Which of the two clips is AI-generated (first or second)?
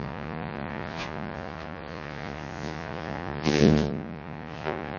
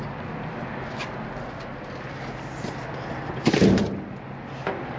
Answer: first